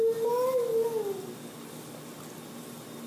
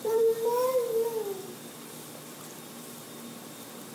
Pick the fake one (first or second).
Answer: second